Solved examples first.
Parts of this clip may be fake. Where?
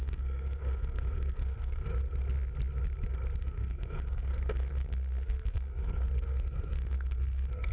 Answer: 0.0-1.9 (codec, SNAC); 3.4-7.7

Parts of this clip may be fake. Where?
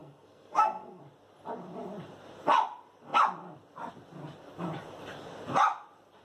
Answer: 0.0-1.0 (codec, SNAC)